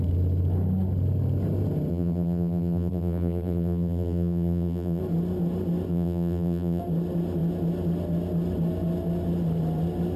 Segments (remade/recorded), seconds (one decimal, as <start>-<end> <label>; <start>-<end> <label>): 0.0-1.9 recorded; 1.9-5.0 remade; 5.0-5.9 recorded; 5.9-6.8 remade; 6.8-10.2 recorded